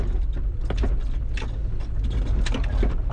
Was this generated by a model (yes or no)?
no